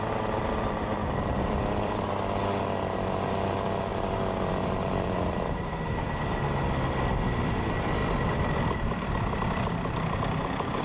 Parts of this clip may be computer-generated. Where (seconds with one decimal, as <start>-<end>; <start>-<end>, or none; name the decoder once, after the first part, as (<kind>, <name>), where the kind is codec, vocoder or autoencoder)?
1.0-2.1 (vocoder, BigVGAN v2); 3.9-5.7; 8.0-9.1